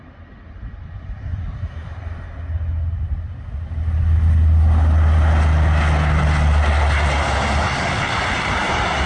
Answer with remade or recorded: recorded